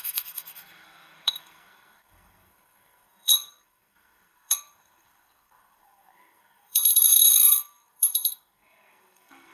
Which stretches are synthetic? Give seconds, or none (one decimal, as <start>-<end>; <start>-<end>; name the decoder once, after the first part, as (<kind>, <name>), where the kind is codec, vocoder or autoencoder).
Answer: 0.0-9.5 (codec, SNAC)